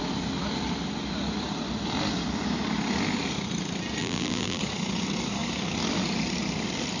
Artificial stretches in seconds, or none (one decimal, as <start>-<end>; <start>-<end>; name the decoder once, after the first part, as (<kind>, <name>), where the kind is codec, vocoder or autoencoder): 4.0-4.6 (vocoder, BigVGAN v2)

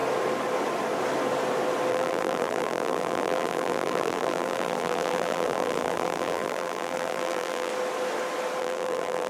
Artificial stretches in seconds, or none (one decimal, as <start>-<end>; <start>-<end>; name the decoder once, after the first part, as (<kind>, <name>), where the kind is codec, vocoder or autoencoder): 1.9-7.7 (vocoder, BigVGAN v2); 8.6-9.3

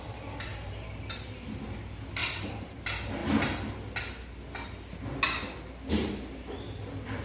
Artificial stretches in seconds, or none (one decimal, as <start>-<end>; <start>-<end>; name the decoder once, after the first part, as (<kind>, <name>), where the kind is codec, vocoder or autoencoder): 2.2-2.8 (vocoder, BigVGAN v2)